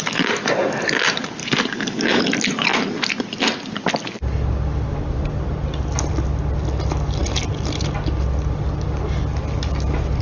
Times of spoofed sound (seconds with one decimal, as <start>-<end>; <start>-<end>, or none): 1.4-2.2